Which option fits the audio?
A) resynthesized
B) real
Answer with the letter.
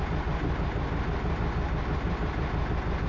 B